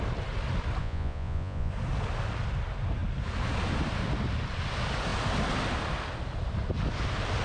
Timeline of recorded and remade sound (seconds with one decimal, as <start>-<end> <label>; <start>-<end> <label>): 0.0-0.8 recorded; 0.8-1.7 remade; 1.7-7.4 recorded

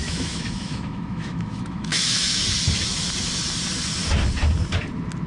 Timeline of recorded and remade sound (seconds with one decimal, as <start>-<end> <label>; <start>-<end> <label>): 0.0-2.4 remade; 2.4-5.3 recorded

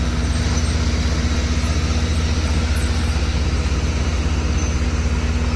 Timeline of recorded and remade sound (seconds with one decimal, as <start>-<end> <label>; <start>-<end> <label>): 0.0-5.6 recorded

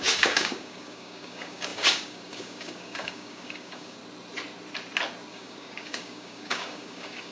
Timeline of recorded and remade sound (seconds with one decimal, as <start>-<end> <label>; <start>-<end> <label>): 0.0-4.0 remade; 4.0-5.3 recorded; 5.3-7.3 remade

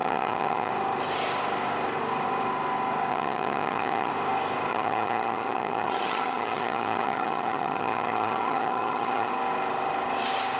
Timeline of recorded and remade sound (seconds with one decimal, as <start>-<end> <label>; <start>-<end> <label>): 0.0-0.7 remade; 0.7-3.1 recorded; 3.1-4.1 remade; 4.1-4.7 recorded; 4.7-9.3 remade; 9.3-10.6 recorded

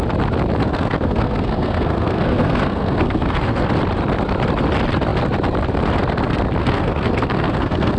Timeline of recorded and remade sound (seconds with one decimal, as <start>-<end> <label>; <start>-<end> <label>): 0.0-0.6 recorded; 0.6-3.7 remade; 3.7-6.6 recorded; 6.6-8.0 remade